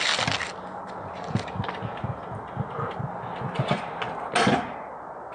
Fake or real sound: real